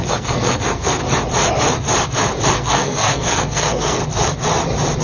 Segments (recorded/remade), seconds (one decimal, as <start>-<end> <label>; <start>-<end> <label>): 0.0-1.0 remade; 1.0-2.5 recorded; 2.5-4.0 remade; 4.0-5.0 recorded